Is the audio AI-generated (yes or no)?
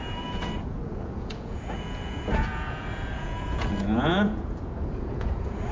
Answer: yes